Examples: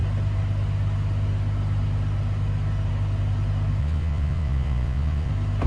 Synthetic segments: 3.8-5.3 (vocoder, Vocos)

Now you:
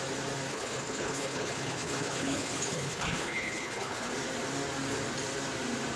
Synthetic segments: 0.5-4.1 (codec, HILCodec)

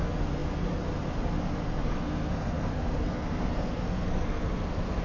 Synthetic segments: 1.9-5.0 (codec, SNAC)

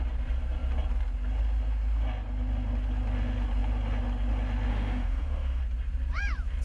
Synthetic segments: 4.7-5.6 (autoencoder, DAC-VAE)